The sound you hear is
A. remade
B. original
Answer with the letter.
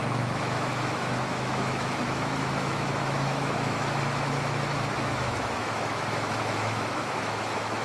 A